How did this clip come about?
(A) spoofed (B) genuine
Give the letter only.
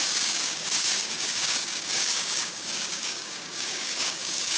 A